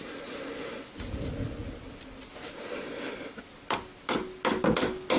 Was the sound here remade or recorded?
recorded